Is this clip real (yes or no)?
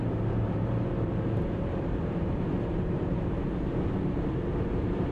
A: no